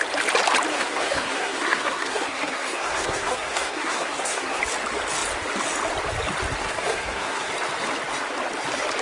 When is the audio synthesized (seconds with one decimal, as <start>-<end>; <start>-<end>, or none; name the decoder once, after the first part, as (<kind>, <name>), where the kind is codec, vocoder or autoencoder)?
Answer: 0.7-4.6 (codec, SNAC); 6.6-7.5